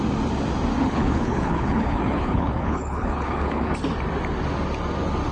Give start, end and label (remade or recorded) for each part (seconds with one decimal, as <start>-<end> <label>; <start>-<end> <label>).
0.0-0.8 recorded; 0.8-3.7 remade; 3.7-5.3 recorded